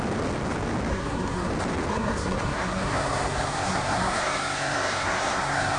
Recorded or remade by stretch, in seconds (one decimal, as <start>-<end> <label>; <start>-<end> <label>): 0.0-0.9 recorded; 0.9-1.5 remade; 1.5-1.9 recorded; 1.9-5.8 remade